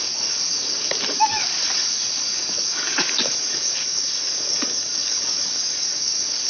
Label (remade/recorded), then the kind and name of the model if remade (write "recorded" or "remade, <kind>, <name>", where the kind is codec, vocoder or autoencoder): remade, codec, DAC